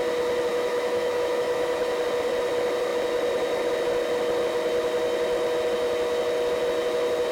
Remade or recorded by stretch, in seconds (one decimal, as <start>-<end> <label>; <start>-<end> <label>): 0.0-0.5 recorded; 0.5-1.8 remade; 1.8-7.3 recorded